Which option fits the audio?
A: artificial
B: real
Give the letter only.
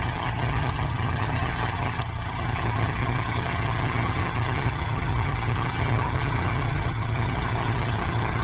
A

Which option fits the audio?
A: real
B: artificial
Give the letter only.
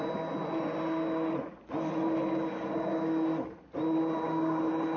A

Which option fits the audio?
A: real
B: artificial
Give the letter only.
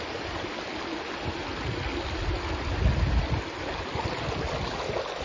A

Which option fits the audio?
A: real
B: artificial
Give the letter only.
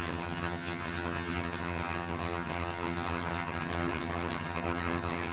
B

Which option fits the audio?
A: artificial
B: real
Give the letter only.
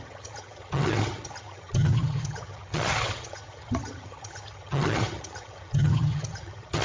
A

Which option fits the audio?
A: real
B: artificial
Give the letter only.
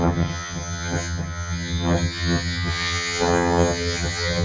B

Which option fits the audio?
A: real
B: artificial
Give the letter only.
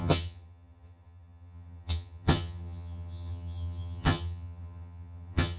B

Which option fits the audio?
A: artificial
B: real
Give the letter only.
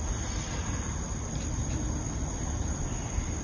B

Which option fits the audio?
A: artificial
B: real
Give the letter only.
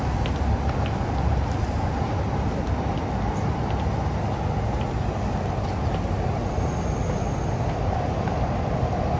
B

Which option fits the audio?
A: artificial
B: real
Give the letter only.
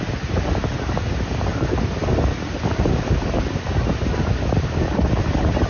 B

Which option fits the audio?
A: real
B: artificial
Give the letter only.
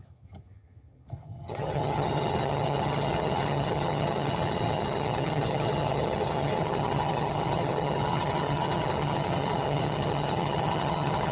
B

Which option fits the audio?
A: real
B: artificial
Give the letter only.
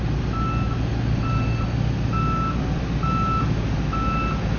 A